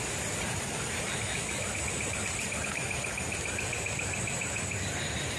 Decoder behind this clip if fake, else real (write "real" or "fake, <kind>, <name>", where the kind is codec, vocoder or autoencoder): fake, vocoder, BigVGAN v2